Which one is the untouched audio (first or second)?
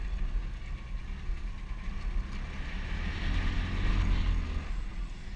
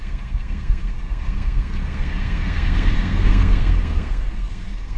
first